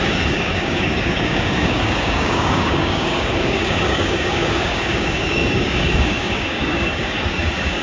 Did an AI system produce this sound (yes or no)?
yes